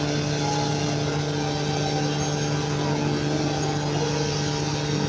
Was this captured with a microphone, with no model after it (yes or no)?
yes